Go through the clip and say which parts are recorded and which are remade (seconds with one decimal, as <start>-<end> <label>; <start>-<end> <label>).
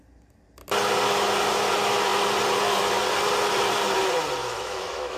0.0-4.4 recorded; 4.4-5.2 remade